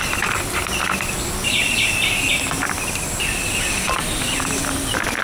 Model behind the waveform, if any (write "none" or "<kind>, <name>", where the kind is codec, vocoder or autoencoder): none